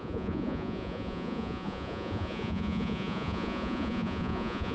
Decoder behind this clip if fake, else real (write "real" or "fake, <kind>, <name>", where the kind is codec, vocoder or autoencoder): fake, vocoder, Vocos